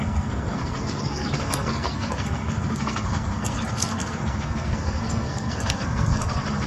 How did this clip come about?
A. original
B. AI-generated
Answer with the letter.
B